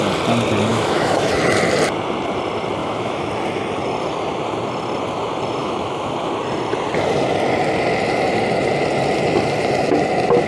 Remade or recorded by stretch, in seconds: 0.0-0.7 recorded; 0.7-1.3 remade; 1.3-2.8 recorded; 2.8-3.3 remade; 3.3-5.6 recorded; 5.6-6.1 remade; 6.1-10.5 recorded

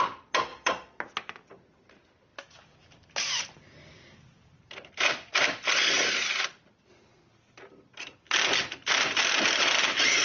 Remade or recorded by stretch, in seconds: 0.0-0.5 recorded; 0.5-1.0 remade; 1.0-2.3 recorded; 2.3-5.7 remade; 5.7-7.3 recorded; 7.3-9.4 remade; 9.4-10.2 recorded

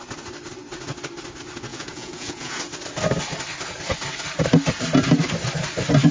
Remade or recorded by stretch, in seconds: 0.0-1.7 recorded; 1.7-2.6 remade; 2.6-6.1 recorded

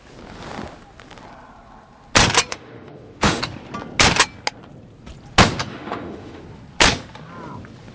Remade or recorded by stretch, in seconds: 0.0-2.5 recorded; 2.5-3.4 remade; 3.4-5.7 recorded; 5.7-6.4 remade; 6.4-7.9 recorded

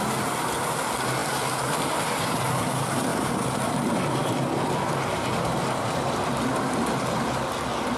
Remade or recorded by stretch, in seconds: 0.0-8.0 recorded

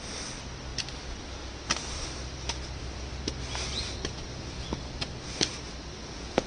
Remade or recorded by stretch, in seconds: 0.0-6.0 recorded; 6.0-6.5 remade

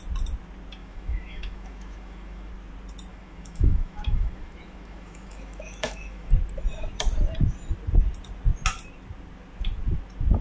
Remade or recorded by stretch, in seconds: 0.0-0.8 recorded; 0.8-2.5 remade; 2.5-3.1 recorded; 3.1-6.3 remade; 6.3-10.4 recorded